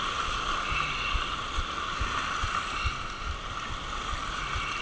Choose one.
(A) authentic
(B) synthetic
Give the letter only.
A